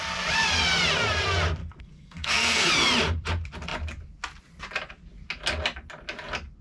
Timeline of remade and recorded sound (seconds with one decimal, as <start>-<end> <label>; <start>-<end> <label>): 0.0-1.6 recorded; 1.6-2.7 remade; 2.7-6.6 recorded